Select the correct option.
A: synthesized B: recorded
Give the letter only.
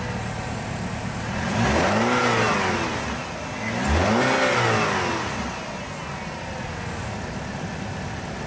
B